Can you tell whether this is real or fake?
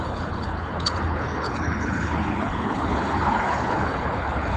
fake